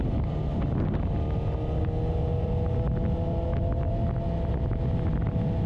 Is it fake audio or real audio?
real